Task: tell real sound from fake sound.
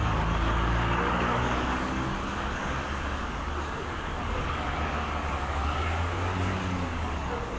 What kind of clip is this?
fake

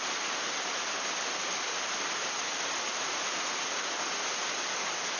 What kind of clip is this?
real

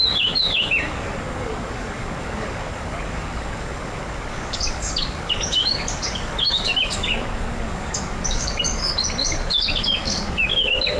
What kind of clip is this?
fake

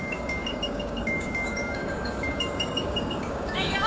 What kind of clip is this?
fake